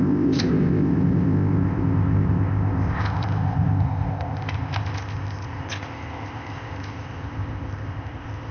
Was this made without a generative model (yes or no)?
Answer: no